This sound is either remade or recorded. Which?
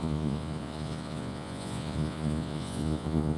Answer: remade